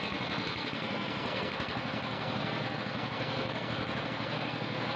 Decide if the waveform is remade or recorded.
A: remade